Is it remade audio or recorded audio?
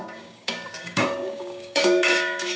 remade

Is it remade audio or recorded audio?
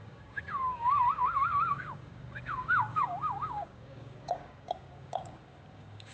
remade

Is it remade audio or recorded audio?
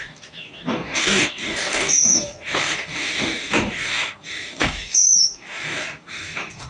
remade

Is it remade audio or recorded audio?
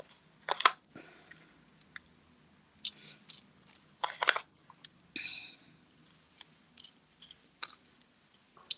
recorded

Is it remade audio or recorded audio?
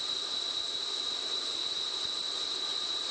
recorded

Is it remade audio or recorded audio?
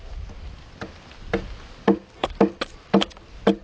recorded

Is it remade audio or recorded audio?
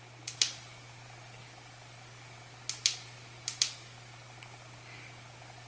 recorded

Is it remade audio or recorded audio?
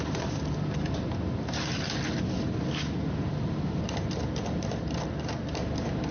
recorded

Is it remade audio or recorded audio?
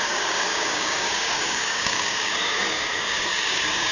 remade